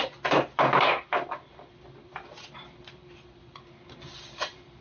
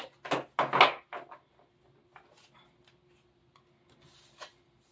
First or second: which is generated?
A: first